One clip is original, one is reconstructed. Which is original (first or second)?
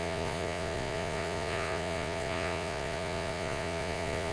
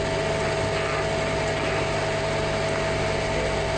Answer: second